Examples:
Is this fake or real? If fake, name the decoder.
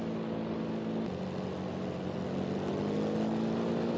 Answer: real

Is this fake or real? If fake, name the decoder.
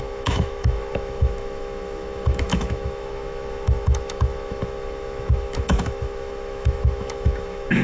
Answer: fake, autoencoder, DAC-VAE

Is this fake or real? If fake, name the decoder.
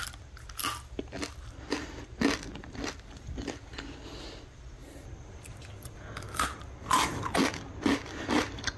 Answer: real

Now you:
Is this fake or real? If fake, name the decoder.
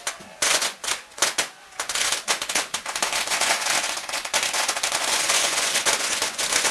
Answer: fake, vocoder, Vocos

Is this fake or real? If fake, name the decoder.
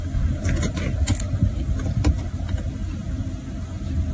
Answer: real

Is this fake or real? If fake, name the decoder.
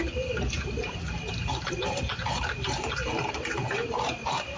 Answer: fake, vocoder, BigVGAN v2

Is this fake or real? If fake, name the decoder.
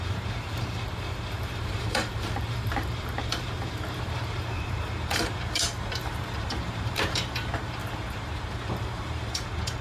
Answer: fake, vocoder, BigVGAN v2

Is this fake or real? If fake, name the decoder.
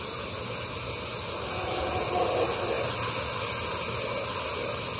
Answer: real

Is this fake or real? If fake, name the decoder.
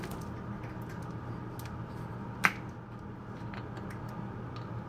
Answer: real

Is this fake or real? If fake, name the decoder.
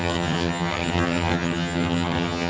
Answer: fake, vocoder, HiFi-GAN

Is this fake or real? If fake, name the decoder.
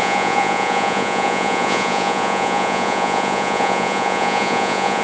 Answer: fake, vocoder, Vocos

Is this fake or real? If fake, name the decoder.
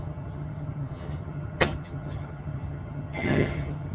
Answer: fake, vocoder, HiFi-GAN